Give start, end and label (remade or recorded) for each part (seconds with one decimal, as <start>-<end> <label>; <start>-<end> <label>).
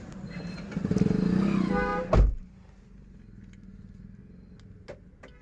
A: 0.0-5.4 recorded